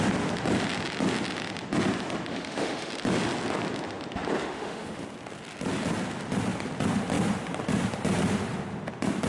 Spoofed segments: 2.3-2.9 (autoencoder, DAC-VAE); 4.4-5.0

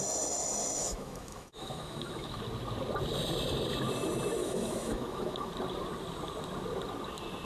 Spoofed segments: 0.8-2.4 (autoencoder, DAC-VAE); 4.4-5.5

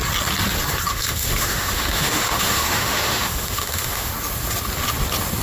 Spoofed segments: 0.9-4.1 (autoencoder, DAC-VAE)

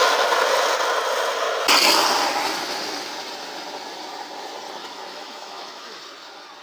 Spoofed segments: 4.8-6.0 (autoencoder, DAC-VAE)

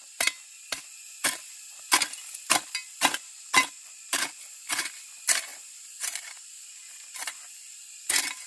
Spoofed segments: none

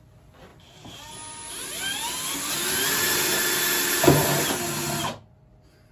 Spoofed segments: none

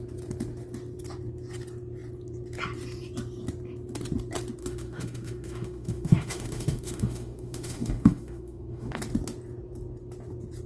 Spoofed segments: 4.6-9.0 (autoencoder, DAC-VAE)

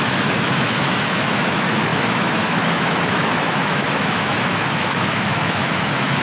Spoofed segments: 0.0-6.2 (autoencoder, DAC-VAE)